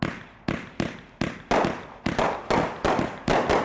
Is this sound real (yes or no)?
yes